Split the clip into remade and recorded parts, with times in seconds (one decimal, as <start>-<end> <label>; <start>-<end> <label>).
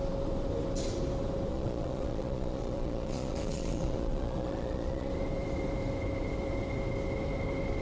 0.0-1.5 recorded; 1.5-5.1 remade; 5.1-7.8 recorded